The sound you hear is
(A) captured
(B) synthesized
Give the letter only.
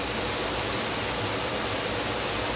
A